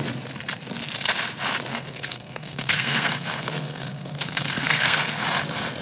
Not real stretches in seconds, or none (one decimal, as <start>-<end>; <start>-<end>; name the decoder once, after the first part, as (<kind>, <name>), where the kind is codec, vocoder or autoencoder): 1.7-5.2 (codec, SNAC)